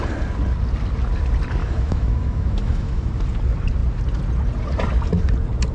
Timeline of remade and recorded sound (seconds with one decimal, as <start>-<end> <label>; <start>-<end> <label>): 0.0-1.6 recorded; 1.6-3.1 remade; 3.1-5.7 recorded